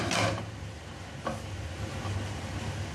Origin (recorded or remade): recorded